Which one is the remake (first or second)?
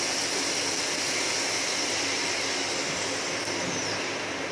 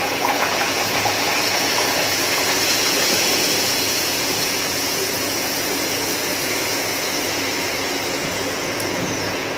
second